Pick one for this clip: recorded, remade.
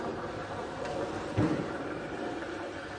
remade